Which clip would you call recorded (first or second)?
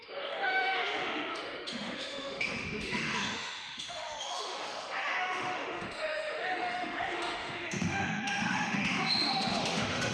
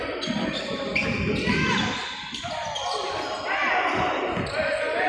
second